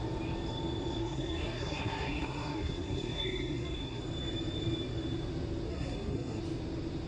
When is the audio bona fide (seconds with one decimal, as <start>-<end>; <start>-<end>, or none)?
0.0-1.0; 4.0-5.7; 6.4-7.1